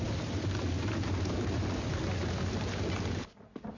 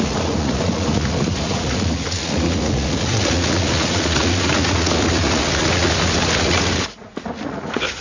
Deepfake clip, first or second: second